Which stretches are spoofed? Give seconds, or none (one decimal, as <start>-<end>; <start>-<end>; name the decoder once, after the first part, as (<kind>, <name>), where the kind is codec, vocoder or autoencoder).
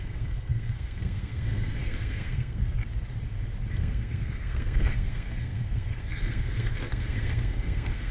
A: 0.0-2.8 (codec, SNAC); 3.7-8.1